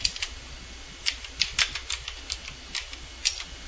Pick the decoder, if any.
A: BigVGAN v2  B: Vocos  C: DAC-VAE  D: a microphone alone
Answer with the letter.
D